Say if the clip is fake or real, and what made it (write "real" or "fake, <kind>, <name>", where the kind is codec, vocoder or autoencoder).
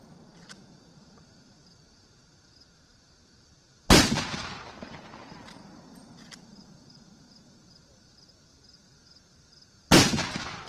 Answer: real